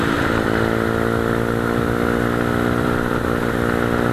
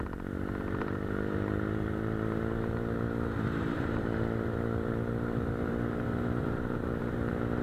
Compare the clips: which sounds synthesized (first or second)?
second